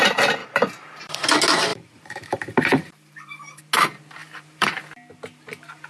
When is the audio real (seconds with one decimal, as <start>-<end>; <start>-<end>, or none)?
0.0-0.4; 1.2-1.7; 3.6-4.2; 4.8-5.9